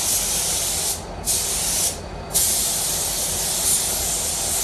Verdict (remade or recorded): recorded